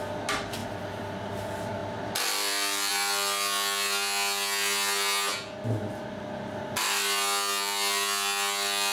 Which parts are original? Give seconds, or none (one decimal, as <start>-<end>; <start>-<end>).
0.0-8.9